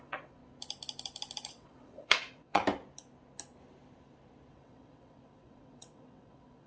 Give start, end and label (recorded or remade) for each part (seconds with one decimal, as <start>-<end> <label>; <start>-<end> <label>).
0.0-0.4 remade; 0.4-1.5 recorded; 1.5-2.6 remade; 2.6-4.5 recorded; 4.5-6.7 remade